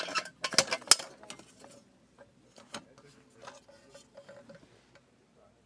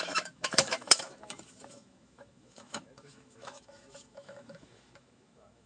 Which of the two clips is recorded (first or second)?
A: first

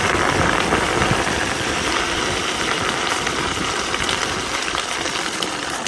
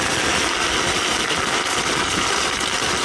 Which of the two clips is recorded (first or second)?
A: second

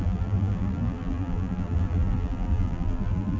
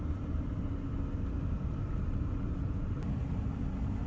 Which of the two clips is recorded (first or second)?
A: second